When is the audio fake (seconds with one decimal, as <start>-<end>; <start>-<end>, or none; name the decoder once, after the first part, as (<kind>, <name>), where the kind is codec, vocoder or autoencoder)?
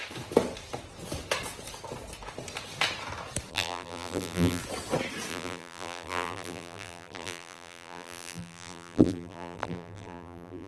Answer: 3.5-4.6 (vocoder, BigVGAN v2); 5.3-10.7